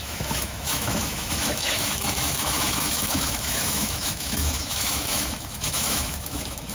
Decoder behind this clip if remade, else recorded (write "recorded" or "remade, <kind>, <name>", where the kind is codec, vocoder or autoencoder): remade, autoencoder, DAC-VAE